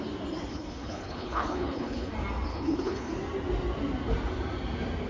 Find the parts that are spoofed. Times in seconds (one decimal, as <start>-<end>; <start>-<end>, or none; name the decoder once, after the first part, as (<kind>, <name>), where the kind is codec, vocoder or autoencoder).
0.5-2.1 (codec, HILCodec); 2.5-3.1

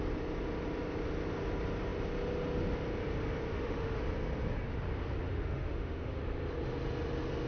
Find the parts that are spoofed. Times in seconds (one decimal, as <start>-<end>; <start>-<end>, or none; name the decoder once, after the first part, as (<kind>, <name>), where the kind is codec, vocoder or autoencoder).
3.5-4.0 (autoencoder, DAC-VAE); 5.3-6.2

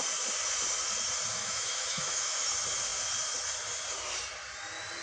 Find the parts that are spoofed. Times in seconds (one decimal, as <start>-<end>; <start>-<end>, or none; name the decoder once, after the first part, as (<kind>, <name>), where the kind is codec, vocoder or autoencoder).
1.4-2.5 (autoencoder, DAC-VAE)

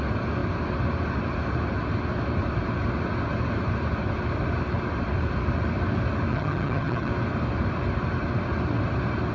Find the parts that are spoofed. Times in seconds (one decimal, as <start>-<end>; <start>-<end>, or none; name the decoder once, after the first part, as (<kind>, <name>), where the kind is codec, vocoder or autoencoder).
6.3-7.1 (vocoder, HiFi-GAN)

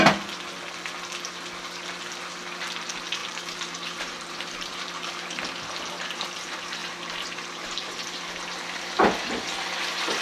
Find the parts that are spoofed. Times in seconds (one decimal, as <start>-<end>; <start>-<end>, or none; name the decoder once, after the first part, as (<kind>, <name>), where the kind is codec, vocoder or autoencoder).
3.2-5.1 (vocoder, BigVGAN v2); 6.8-7.9

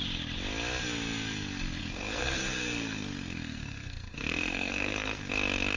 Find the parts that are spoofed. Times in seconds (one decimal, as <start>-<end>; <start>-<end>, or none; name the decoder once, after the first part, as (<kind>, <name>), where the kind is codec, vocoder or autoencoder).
1.8-5.3 (codec, SNAC)

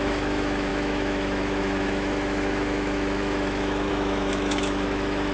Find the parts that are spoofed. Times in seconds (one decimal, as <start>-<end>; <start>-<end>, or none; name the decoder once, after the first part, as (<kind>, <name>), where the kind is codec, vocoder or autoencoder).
0.0-5.3 (autoencoder, DAC-VAE)